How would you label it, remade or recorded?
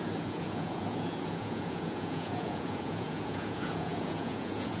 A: remade